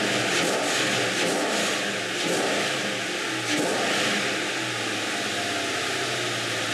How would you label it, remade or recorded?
recorded